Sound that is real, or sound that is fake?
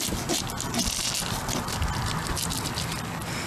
real